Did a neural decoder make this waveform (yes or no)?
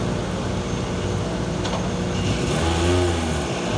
no